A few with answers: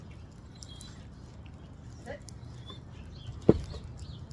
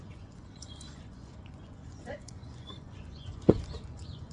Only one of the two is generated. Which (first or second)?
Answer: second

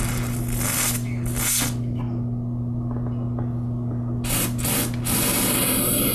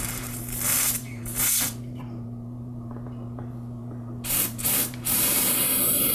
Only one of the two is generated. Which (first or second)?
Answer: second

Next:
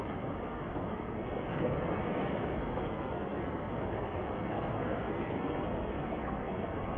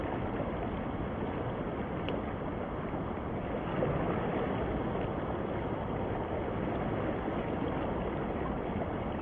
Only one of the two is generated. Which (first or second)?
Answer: first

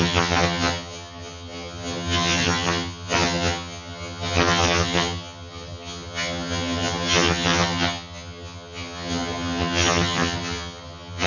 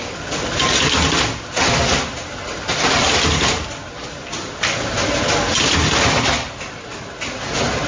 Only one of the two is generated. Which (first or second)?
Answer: first